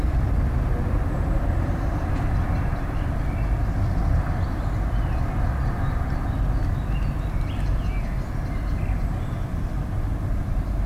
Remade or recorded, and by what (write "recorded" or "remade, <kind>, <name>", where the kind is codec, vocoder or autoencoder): recorded